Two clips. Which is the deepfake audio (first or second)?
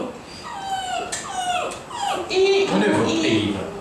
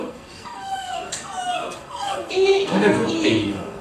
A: second